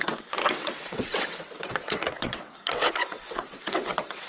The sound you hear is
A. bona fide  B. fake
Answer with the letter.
B